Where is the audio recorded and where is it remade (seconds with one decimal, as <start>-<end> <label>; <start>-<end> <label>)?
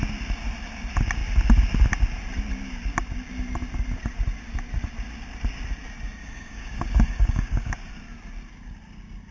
0.0-6.2 recorded; 6.2-7.9 remade; 7.9-9.3 recorded